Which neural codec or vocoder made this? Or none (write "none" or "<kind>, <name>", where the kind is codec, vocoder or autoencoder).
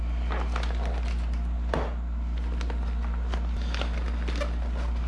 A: none